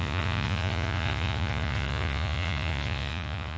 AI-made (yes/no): yes